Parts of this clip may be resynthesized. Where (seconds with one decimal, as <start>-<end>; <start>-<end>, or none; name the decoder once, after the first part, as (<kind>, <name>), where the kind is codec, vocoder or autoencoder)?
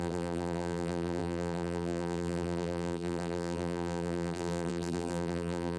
0.0-5.8 (vocoder, BigVGAN v2)